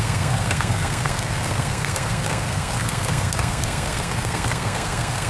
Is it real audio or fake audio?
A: fake